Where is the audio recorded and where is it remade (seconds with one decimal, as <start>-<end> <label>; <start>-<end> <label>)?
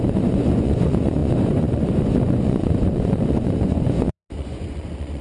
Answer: 0.0-5.2 remade